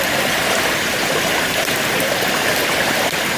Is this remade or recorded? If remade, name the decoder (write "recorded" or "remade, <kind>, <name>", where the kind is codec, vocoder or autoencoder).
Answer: recorded